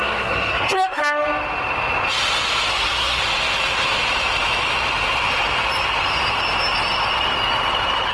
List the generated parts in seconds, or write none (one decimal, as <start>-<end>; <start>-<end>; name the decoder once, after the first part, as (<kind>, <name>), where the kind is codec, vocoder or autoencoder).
0.0-1.0 (codec, SNAC); 2.7-3.2